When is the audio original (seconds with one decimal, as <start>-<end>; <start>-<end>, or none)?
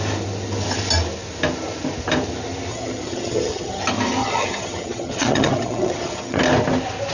0.0-2.7; 3.8-4.2; 6.4-7.1